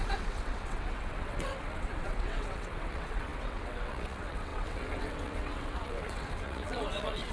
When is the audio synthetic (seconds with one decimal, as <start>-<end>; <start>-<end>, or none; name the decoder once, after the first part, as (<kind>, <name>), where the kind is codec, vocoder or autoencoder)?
0.0-7.3 (vocoder, WaveNeXt)